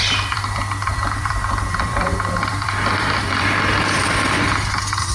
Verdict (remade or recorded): remade